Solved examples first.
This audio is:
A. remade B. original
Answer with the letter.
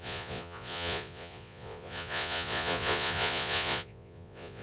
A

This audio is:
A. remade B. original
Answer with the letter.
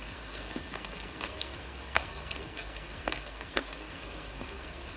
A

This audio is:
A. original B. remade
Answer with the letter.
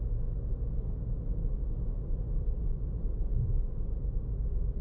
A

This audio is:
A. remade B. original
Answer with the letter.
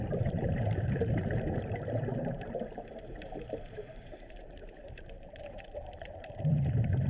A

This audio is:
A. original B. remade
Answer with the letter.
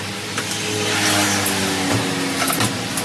A